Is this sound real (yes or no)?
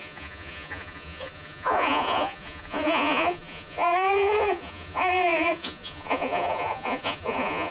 no